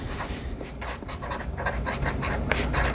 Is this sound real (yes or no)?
no